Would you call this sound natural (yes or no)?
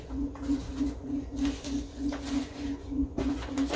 no